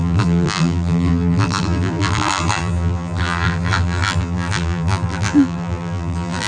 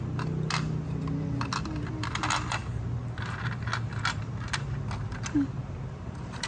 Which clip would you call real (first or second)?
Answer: second